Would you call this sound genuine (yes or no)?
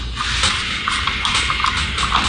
yes